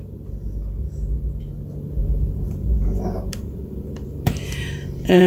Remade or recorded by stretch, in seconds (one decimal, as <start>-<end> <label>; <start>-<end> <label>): 0.0-2.0 recorded; 2.0-5.3 remade